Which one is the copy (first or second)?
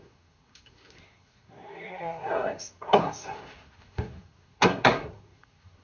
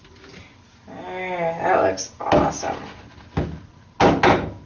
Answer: first